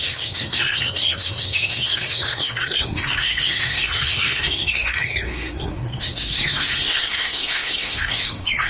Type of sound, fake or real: fake